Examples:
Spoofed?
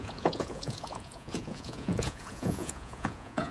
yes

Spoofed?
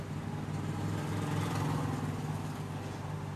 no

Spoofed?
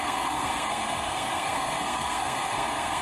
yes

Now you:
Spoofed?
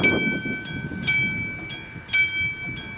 no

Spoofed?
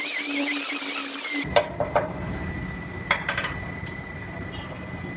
no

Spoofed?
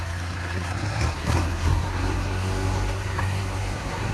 yes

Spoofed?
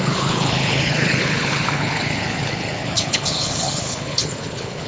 yes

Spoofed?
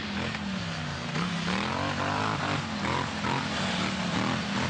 no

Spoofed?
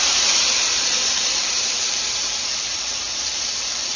yes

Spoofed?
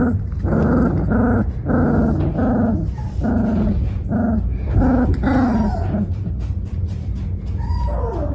no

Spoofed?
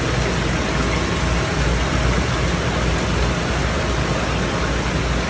no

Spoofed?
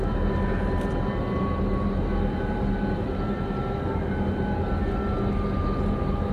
no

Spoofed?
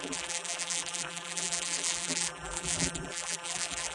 yes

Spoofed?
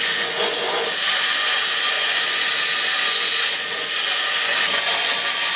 yes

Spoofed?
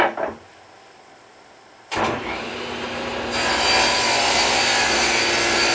no